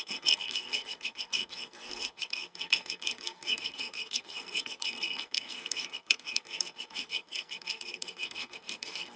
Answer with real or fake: fake